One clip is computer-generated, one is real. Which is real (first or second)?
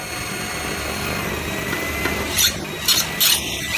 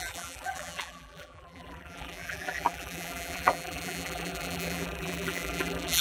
first